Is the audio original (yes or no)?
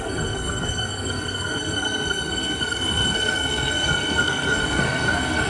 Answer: no